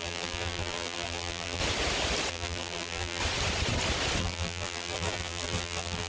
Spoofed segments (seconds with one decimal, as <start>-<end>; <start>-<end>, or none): 0.0-1.6; 2.3-3.2; 4.2-6.1